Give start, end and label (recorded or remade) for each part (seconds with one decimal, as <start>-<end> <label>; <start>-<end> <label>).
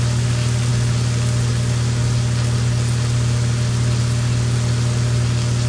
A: 0.0-5.7 recorded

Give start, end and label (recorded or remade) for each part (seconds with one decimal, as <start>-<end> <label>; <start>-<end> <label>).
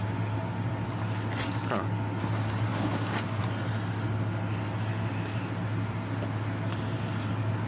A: 0.0-2.7 recorded; 2.7-3.4 remade; 3.4-7.7 recorded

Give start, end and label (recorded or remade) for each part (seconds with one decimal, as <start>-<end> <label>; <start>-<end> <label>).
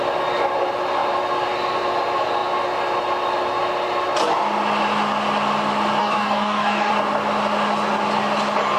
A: 0.0-6.0 recorded; 6.0-6.9 remade; 6.9-8.8 recorded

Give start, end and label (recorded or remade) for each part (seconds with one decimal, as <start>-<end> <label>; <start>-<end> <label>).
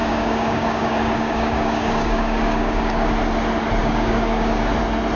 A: 0.0-3.1 remade; 3.1-3.8 recorded; 3.8-4.7 remade; 4.7-5.2 recorded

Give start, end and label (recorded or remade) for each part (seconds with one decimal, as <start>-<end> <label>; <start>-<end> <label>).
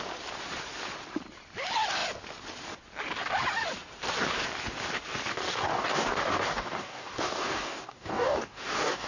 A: 0.0-5.3 recorded; 5.3-9.1 remade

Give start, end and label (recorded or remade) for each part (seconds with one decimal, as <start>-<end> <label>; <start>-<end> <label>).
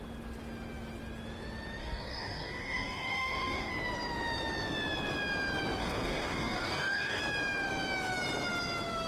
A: 0.0-1.8 recorded; 1.8-3.7 remade; 3.7-5.8 recorded; 5.8-7.2 remade; 7.2-9.1 recorded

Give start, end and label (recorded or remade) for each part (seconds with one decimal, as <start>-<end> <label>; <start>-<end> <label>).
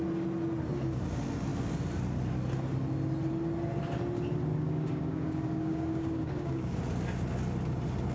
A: 0.0-4.5 recorded; 4.5-6.8 remade; 6.8-8.1 recorded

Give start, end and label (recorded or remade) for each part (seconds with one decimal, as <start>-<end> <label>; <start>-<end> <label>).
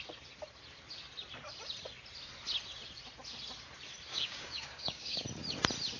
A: 0.0-4.1 recorded; 4.1-5.2 remade; 5.2-6.0 recorded